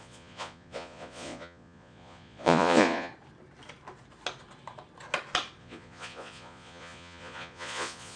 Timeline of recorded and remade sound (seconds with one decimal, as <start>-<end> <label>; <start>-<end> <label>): 0.0-3.1 remade; 3.1-5.6 recorded; 5.6-8.2 remade